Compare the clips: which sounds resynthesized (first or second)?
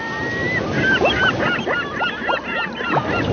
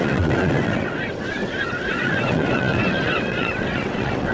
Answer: second